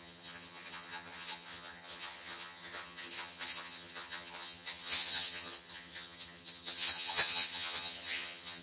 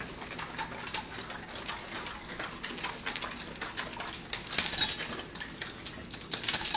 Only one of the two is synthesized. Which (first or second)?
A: first